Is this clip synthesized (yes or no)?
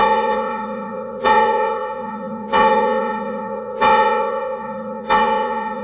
yes